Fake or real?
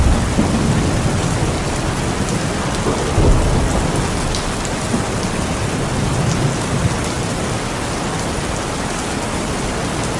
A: real